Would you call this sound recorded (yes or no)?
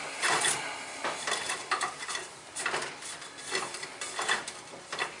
no